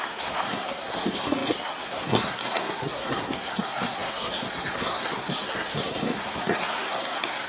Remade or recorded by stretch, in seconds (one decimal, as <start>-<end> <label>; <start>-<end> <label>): 0.0-7.5 remade